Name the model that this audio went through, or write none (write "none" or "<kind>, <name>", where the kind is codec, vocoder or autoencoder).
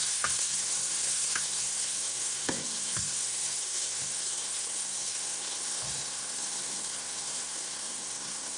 codec, SNAC